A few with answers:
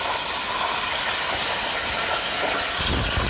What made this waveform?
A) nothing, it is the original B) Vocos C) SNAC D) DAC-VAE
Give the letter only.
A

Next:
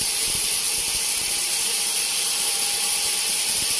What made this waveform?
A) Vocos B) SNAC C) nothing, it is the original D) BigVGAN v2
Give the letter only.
D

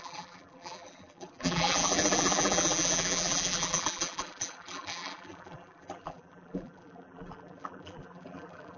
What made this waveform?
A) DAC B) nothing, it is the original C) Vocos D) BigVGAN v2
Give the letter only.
D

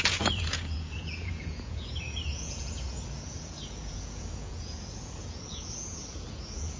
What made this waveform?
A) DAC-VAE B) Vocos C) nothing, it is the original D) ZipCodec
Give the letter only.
B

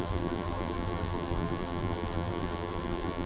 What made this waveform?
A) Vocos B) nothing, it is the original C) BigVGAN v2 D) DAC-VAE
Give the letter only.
C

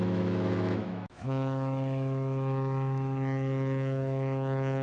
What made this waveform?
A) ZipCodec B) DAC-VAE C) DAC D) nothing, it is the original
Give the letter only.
B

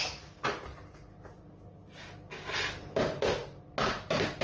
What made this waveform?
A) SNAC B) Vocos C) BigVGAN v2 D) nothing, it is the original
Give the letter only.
D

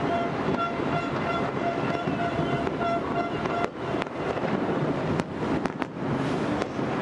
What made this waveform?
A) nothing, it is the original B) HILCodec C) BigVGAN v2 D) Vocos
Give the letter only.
C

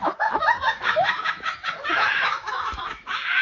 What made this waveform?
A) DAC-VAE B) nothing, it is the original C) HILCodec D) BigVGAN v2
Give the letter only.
A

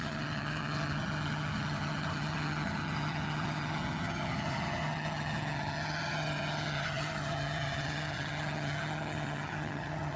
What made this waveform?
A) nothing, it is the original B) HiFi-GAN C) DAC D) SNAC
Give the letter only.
B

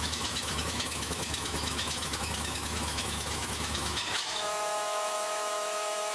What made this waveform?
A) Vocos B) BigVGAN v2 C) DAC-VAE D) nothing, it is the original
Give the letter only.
C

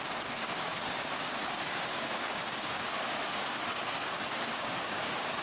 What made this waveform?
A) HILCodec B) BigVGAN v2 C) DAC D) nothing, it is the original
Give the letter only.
C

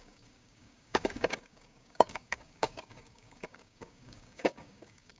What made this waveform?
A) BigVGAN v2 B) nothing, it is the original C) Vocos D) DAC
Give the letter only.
D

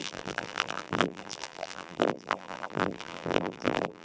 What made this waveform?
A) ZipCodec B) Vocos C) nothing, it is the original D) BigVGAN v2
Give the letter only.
D